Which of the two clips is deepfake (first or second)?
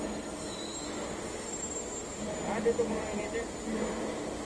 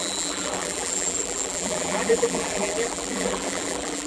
second